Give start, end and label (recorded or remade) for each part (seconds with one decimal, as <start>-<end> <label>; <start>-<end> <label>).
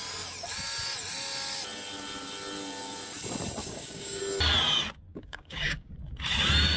0.0-3.6 recorded; 3.6-4.2 remade; 4.2-5.1 recorded; 5.1-5.9 remade; 5.9-6.8 recorded